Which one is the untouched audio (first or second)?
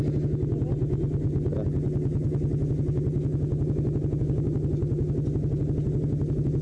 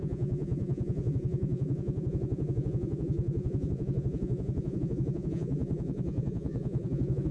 first